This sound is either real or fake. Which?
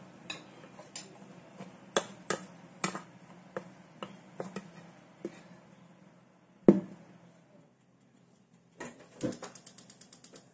real